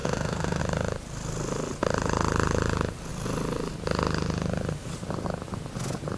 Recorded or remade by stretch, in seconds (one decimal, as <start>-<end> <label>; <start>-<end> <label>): 0.0-0.6 remade; 0.6-6.2 recorded